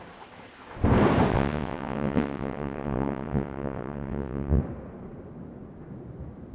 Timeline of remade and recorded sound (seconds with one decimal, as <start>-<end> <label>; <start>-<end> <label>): 0.0-1.3 recorded; 1.3-4.6 remade; 4.6-6.5 recorded